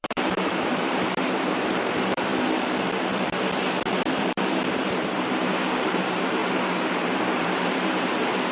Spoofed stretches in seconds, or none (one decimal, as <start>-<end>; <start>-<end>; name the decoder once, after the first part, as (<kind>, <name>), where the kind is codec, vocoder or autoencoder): 0.0-2.3 (vocoder, BigVGAN v2); 4.2-6.4; 6.9-8.5